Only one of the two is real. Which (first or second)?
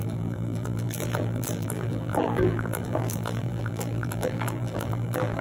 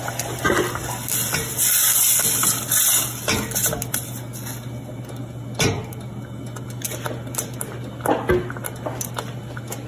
second